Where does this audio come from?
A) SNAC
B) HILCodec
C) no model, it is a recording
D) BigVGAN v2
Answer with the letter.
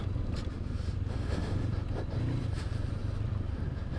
C